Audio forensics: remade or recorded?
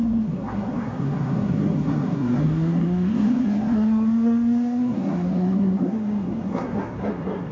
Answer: remade